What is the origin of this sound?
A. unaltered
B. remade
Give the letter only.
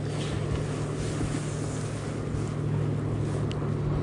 A